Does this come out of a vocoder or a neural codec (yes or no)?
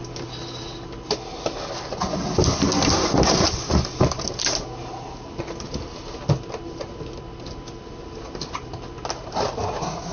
no